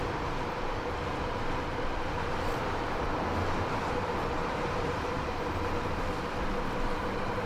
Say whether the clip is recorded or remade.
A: remade